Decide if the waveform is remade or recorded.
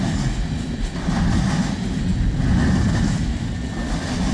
recorded